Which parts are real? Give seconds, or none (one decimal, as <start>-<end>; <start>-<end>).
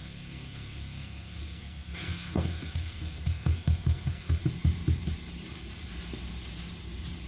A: 4.4-7.3